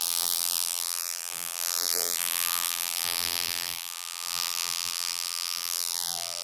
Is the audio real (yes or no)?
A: no